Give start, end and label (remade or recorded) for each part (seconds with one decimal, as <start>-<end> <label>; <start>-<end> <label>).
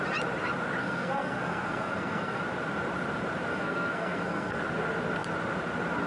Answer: 0.0-0.8 recorded; 0.8-2.4 remade; 2.4-3.5 recorded; 3.5-4.6 remade; 4.6-6.1 recorded